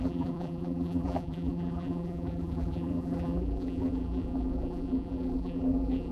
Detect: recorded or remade remade